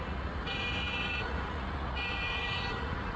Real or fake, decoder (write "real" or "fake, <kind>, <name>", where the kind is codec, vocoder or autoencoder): fake, vocoder, Vocos